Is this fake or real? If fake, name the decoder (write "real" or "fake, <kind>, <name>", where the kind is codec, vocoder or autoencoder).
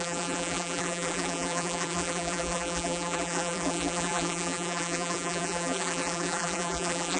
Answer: fake, vocoder, BigVGAN v2